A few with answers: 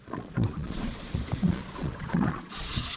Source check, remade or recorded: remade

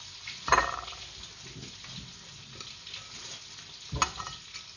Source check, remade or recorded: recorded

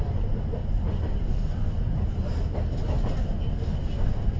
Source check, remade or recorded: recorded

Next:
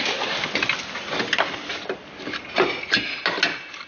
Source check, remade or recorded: recorded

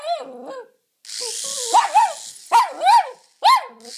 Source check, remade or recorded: recorded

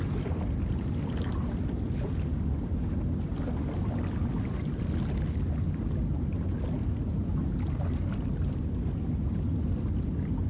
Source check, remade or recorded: recorded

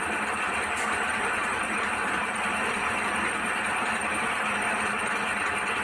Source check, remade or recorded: remade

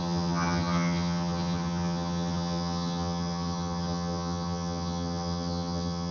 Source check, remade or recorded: remade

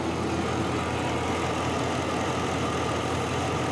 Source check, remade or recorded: recorded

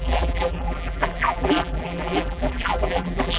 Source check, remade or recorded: remade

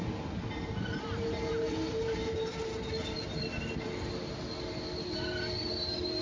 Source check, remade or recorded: recorded